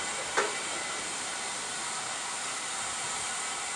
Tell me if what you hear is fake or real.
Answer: fake